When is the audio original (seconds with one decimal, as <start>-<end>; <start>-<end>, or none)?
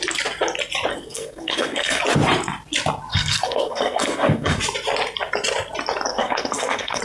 0.0-0.9; 2.0-3.1; 4.6-6.1